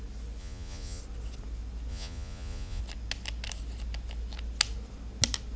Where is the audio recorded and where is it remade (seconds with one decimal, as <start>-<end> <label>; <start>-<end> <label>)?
0.0-0.4 recorded; 0.4-1.0 remade; 1.0-1.9 recorded; 1.9-2.8 remade; 2.8-5.6 recorded

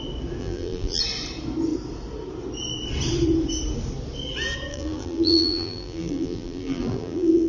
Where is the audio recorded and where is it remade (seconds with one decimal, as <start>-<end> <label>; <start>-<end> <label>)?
0.0-0.4 recorded; 0.4-1.0 remade; 1.0-4.7 recorded; 4.7-7.5 remade

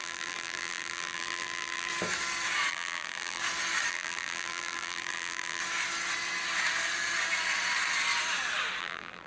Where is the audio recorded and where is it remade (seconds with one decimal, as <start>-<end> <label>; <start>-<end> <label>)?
0.0-1.9 remade; 1.9-2.7 recorded; 2.7-3.4 remade; 3.4-3.9 recorded; 3.9-5.6 remade; 5.6-8.8 recorded; 8.8-9.3 remade

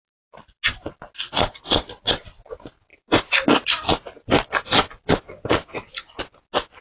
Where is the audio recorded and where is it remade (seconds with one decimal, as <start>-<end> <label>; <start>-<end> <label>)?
0.0-6.8 recorded

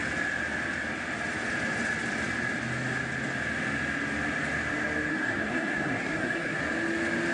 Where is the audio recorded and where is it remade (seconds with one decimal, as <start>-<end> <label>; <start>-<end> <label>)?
0.0-5.1 recorded; 5.1-6.6 remade; 6.6-7.3 recorded

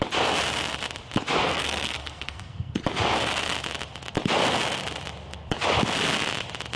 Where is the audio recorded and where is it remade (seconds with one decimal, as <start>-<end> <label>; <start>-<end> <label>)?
0.0-1.5 recorded; 1.5-2.8 remade; 2.8-6.8 recorded